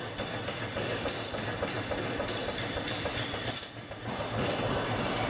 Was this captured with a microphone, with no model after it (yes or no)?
yes